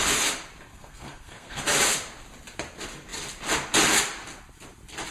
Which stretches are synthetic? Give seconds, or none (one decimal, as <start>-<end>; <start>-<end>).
0.7-1.6